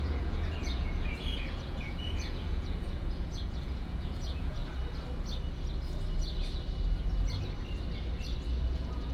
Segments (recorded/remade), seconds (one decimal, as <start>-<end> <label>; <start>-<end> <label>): 0.0-4.6 remade; 4.6-8.6 recorded; 8.6-9.1 remade